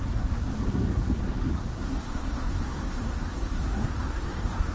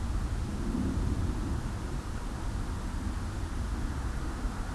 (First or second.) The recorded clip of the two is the second